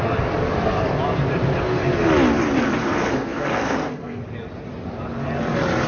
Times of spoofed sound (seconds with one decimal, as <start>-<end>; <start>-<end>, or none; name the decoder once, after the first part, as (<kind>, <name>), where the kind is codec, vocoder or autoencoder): 2.8-4.2 (codec, SNAC)